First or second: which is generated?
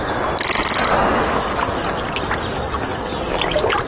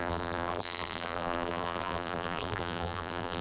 second